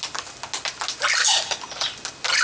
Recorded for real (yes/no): yes